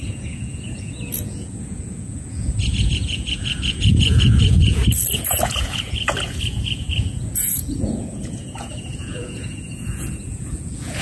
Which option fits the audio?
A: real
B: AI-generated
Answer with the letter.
B